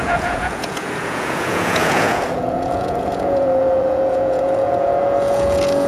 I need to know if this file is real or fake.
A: fake